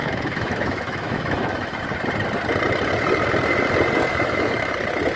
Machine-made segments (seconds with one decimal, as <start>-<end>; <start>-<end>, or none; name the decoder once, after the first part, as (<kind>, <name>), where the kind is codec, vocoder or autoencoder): 0.0-1.8 (autoencoder, DAC-VAE); 4.1-4.7